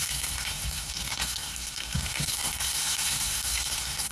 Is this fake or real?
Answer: fake